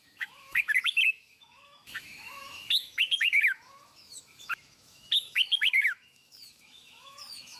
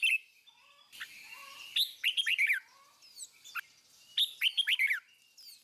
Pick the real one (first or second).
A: second